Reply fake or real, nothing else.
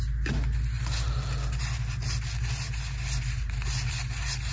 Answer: real